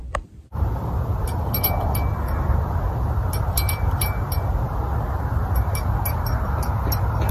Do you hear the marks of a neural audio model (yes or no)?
no